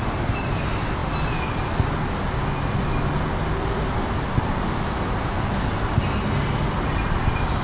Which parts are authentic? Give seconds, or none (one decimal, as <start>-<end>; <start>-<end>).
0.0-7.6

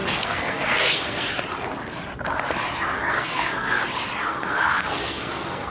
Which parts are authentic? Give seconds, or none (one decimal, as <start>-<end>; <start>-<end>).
1.3-3.0; 3.8-4.3

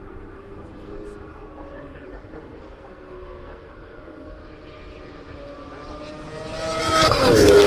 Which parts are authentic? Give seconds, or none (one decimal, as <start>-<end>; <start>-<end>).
4.4-6.8

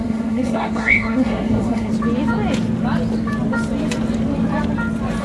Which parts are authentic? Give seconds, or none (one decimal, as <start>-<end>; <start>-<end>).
1.9-5.2

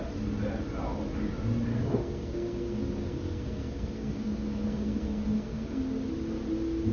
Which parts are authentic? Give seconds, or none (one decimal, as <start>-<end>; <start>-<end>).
0.0-1.7; 5.8-6.9

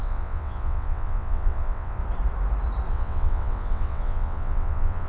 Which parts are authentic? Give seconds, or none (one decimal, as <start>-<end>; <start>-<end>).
2.0-2.9